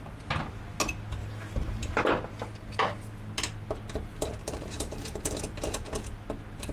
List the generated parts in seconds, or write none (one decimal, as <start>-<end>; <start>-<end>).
1.2-2.1; 4.4-5.4